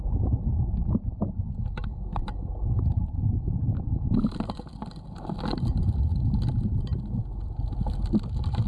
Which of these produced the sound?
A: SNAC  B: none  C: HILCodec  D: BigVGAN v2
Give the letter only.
D